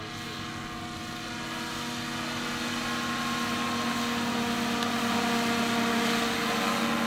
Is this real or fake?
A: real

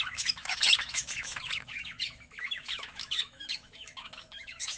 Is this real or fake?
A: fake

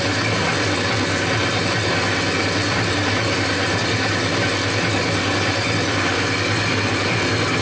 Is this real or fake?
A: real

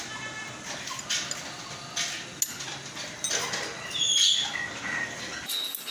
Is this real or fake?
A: real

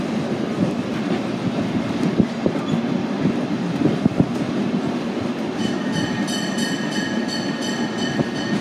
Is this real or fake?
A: real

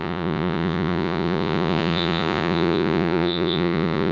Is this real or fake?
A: fake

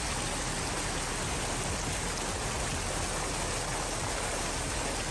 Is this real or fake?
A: real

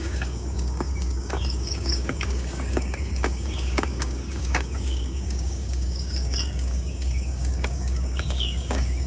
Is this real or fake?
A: fake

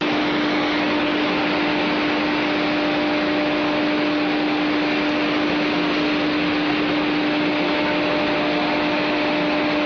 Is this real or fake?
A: real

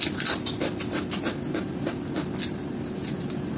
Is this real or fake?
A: real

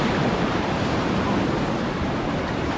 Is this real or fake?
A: fake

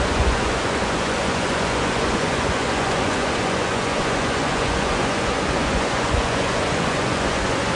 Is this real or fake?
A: fake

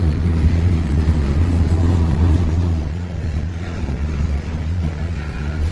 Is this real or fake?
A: fake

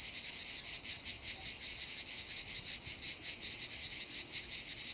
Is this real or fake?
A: real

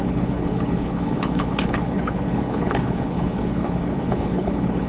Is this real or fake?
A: fake